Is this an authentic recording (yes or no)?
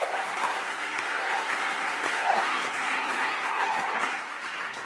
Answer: no